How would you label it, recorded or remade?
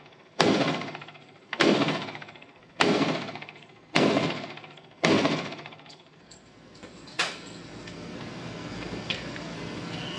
remade